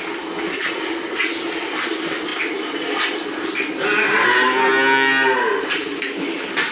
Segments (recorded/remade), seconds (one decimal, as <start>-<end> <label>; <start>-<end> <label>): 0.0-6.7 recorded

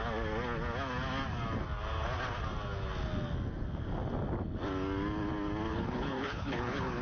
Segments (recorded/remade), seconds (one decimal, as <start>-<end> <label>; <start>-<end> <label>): 0.0-5.7 recorded; 5.7-7.0 remade

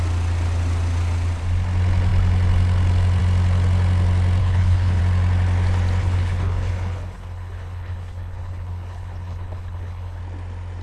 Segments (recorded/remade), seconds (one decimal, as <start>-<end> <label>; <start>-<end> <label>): 0.0-4.4 recorded; 4.4-5.0 remade; 5.0-6.0 recorded; 6.0-10.2 remade; 10.2-10.8 recorded

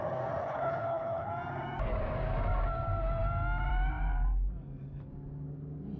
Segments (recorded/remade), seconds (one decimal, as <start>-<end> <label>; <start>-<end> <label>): 0.0-0.4 recorded; 0.4-1.3 remade; 1.3-6.0 recorded

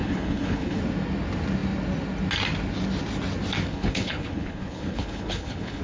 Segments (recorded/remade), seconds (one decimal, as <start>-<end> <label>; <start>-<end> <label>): 0.0-0.8 remade; 0.8-3.7 recorded; 3.7-5.8 remade